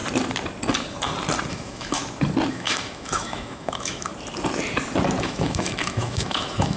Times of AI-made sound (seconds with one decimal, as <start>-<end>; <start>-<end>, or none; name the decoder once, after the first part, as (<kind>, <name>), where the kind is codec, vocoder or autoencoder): 1.5-2.0 (autoencoder, DAC-VAE); 2.5-4.1; 5.2-6.8